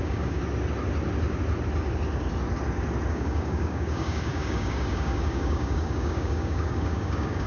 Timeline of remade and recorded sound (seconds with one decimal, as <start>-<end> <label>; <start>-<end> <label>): 0.0-0.4 remade; 0.4-3.1 recorded; 3.1-7.5 remade